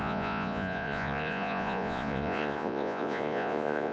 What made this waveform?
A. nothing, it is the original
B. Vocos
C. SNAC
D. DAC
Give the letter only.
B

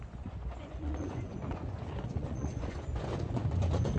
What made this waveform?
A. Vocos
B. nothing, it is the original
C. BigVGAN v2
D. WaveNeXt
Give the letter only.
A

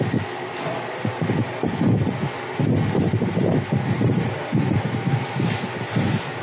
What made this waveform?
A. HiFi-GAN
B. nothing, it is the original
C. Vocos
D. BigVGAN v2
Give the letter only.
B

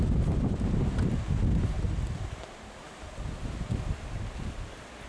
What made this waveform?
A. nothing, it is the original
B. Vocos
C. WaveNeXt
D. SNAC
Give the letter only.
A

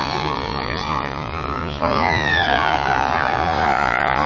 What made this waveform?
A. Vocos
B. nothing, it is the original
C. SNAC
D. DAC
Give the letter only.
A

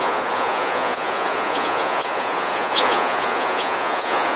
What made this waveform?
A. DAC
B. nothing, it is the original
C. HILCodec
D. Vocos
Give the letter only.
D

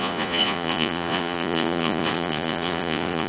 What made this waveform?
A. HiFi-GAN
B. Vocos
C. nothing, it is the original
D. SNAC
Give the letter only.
B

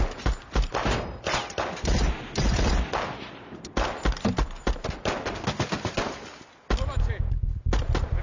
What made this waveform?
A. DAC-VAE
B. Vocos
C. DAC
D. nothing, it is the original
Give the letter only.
D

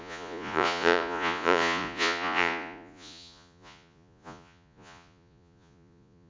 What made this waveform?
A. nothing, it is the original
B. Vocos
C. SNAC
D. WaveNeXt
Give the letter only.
B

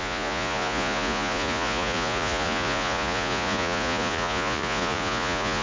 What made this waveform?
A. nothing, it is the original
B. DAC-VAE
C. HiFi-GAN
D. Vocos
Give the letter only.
D